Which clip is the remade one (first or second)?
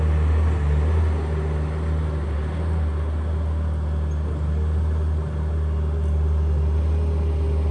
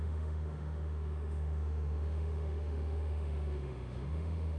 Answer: second